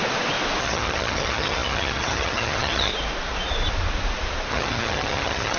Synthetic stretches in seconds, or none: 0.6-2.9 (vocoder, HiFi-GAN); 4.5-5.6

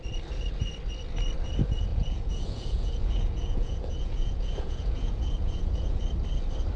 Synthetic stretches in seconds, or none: 1.9-6.0 (vocoder, Vocos)

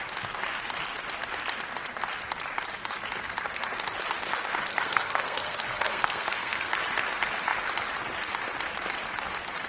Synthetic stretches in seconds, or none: 4.7-6.7 (codec, SNAC)

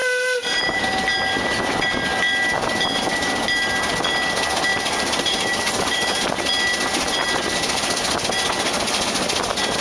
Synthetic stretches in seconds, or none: 0.0-0.8 (vocoder, BigVGAN v2); 4.7-6.3

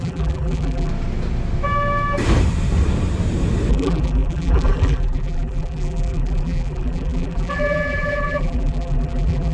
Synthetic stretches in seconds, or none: 0.0-0.9 (vocoder, BigVGAN v2); 3.7-9.5

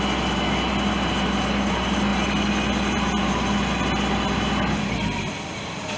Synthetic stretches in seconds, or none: none

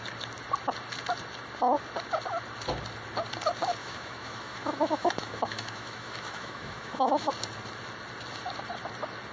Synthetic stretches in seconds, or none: 3.8-7.3 (autoencoder, DAC-VAE)

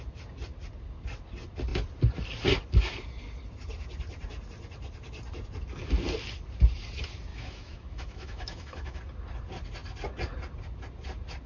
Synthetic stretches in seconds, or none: 7.3-9.0 (autoencoder, DAC-VAE)